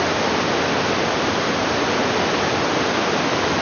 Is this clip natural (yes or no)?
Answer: yes